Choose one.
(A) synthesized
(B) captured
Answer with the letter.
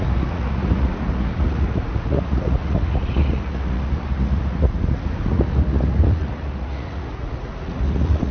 A